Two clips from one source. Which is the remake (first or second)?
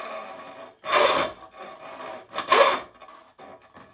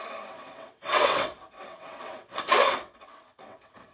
second